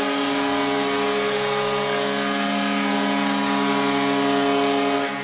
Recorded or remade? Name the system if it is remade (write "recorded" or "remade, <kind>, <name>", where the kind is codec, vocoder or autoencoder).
recorded